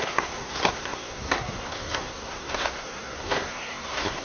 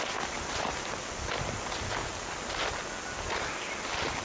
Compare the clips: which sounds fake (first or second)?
first